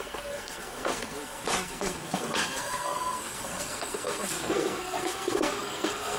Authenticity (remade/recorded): remade